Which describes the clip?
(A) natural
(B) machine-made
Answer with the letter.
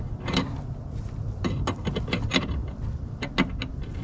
A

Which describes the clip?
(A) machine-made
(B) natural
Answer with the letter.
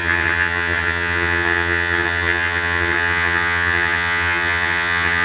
A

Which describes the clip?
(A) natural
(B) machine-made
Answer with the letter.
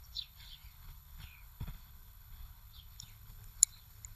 B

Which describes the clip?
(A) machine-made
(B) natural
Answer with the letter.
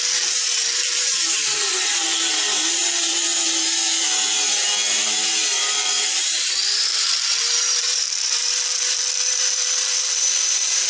A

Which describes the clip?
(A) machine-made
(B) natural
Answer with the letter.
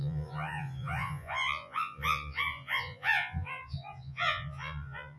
A